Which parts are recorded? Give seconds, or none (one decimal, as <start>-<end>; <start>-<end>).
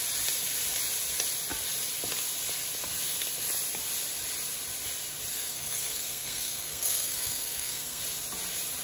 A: 0.0-5.3; 8.0-8.8